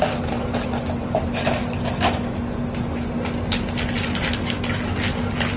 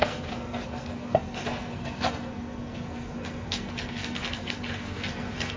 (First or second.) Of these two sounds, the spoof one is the second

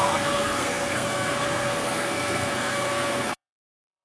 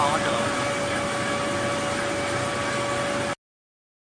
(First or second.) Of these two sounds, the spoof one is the first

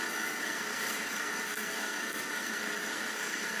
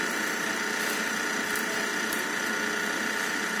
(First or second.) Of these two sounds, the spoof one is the first